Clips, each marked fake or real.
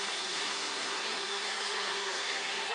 fake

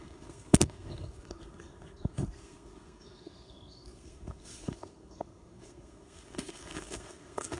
fake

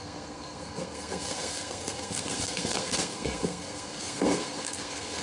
fake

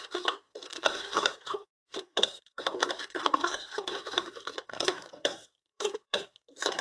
fake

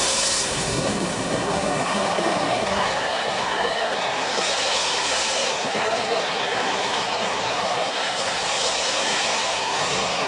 fake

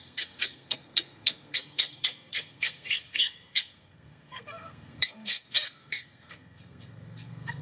fake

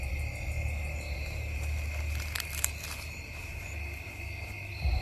real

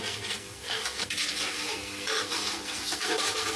fake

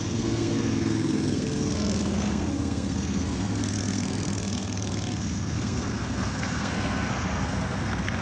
fake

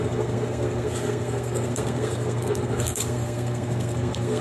fake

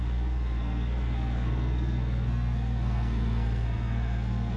fake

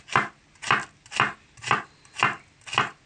real